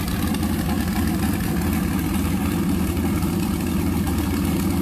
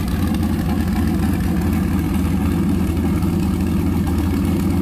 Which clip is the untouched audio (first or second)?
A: second